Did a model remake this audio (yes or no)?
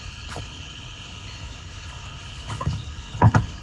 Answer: yes